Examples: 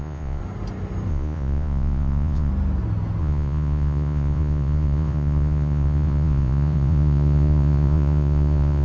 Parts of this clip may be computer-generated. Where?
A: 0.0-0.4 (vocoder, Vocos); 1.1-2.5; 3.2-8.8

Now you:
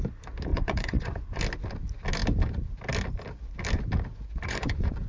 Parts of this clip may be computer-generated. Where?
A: 0.5-1.4 (vocoder, Vocos); 4.1-5.1

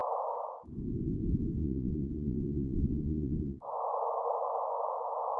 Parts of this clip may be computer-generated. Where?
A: 1.6-4.8 (vocoder, Vocos)

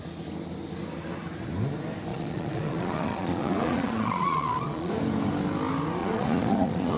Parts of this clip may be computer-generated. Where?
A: 2.1-4.9 (vocoder, Vocos); 6.0-7.0